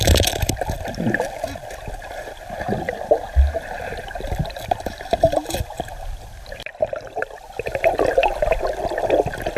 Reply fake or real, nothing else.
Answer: real